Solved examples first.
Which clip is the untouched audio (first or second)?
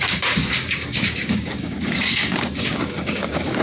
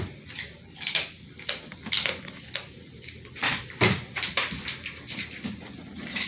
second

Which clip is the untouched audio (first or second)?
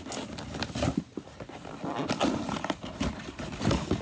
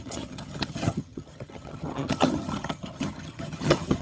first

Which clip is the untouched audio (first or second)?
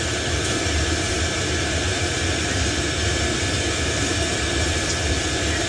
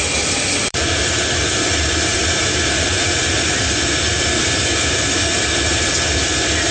first